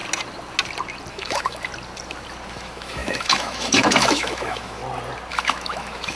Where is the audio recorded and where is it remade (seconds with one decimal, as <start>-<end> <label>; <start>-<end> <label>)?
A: 0.0-1.1 recorded; 1.1-1.7 remade; 1.7-2.5 recorded; 2.5-4.8 remade; 4.8-5.3 recorded; 5.3-6.2 remade